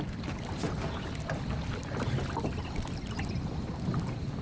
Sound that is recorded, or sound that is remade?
recorded